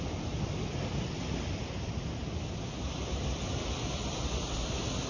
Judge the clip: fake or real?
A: real